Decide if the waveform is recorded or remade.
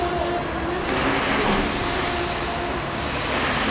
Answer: recorded